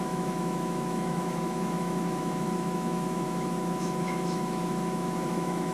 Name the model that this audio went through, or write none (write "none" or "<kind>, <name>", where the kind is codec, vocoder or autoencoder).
autoencoder, DAC-VAE